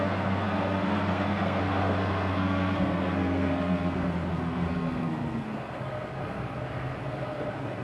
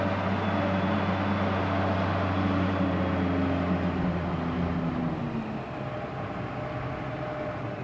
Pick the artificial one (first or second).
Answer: first